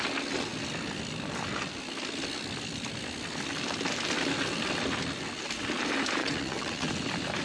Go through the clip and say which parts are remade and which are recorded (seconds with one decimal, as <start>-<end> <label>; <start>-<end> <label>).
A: 0.0-6.2 recorded; 6.2-6.9 remade; 6.9-7.4 recorded